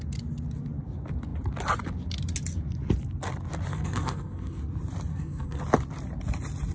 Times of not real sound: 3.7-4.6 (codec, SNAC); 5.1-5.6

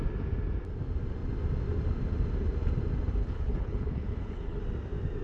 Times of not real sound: 3.2-4.6 (codec, HILCodec)